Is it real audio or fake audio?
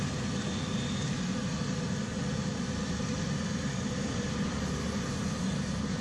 real